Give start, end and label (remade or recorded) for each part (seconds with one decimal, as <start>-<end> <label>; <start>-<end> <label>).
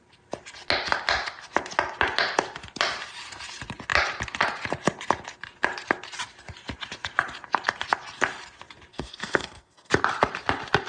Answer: 0.0-8.9 recorded; 8.9-9.9 remade; 9.9-10.9 recorded